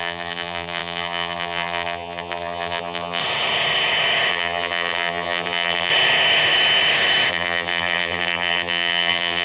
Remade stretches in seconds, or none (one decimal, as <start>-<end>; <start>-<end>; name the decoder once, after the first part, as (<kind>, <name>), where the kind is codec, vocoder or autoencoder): 0.0-3.2 (vocoder, BigVGAN v2); 4.3-5.9; 7.3-9.4